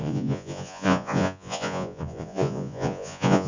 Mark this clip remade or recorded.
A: remade